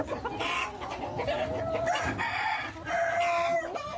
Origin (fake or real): real